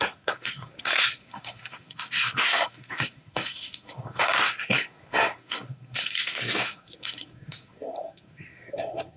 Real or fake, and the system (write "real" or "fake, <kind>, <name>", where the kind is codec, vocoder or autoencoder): fake, codec, SNAC